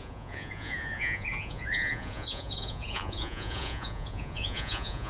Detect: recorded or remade remade